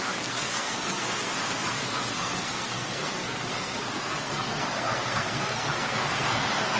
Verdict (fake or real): fake